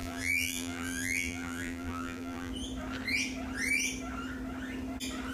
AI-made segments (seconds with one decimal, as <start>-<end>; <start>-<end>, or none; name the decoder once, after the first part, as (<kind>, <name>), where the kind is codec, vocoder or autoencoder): 0.0-2.5 (vocoder, BigVGAN v2)